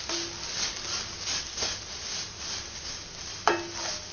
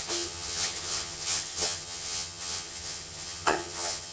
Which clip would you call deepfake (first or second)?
second